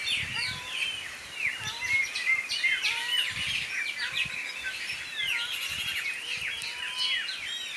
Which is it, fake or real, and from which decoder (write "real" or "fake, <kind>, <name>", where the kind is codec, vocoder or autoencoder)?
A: real